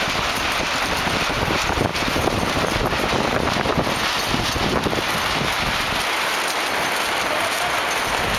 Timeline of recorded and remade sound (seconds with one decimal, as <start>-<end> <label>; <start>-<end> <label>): 0.0-8.4 recorded